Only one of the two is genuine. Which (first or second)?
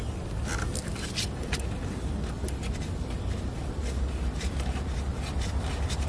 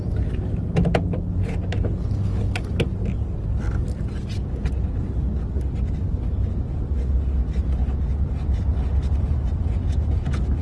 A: second